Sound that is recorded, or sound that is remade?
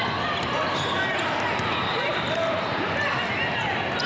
recorded